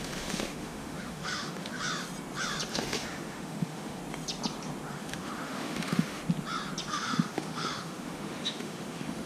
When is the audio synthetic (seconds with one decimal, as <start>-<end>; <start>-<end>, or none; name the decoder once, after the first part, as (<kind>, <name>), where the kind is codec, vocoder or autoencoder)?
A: 0.0-1.8 (autoencoder, DAC-VAE); 2.7-4.0; 4.9-6.2; 6.9-9.3